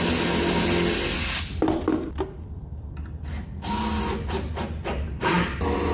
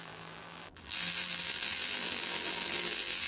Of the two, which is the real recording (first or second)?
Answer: first